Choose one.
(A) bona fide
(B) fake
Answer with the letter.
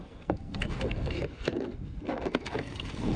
B